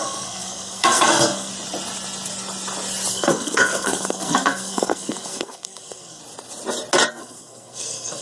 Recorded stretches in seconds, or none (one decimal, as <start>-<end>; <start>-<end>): 1.5-3.1; 6.2-7.1